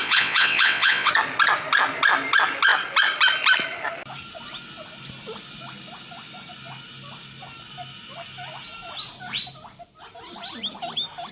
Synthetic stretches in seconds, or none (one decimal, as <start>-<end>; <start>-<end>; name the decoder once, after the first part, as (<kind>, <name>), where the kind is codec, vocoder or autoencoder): 0.0-1.1 (vocoder, WaveNeXt)